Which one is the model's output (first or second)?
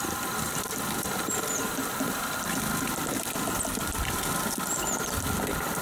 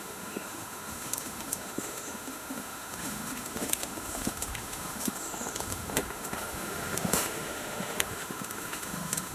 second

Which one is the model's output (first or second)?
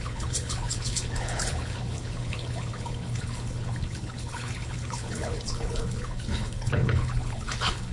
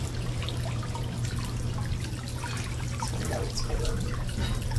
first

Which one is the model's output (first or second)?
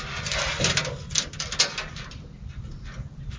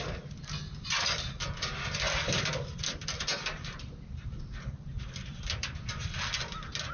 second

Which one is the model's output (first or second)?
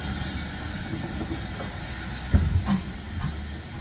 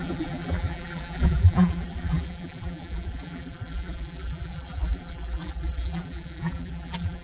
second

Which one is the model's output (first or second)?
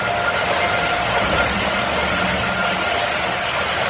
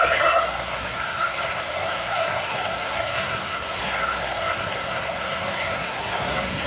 second